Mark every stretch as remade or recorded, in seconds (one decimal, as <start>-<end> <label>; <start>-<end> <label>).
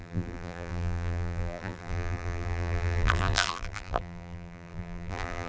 0.0-5.5 remade